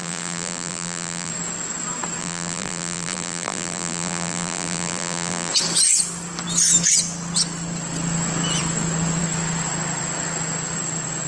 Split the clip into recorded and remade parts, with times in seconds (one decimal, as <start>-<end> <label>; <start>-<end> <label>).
0.0-1.3 remade; 1.3-2.2 recorded; 2.2-5.5 remade; 5.5-11.3 recorded